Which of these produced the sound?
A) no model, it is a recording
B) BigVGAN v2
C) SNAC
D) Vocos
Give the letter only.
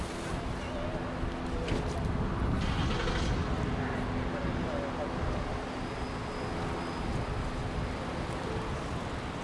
A